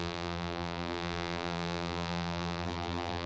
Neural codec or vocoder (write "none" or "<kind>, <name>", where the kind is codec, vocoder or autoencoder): vocoder, BigVGAN v2